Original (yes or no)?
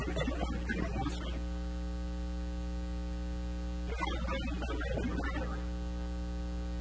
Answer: yes